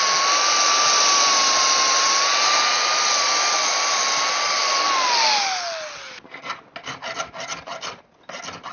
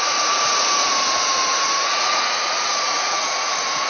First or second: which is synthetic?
second